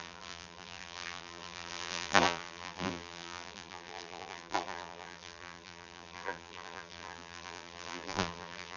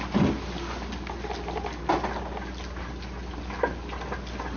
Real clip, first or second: second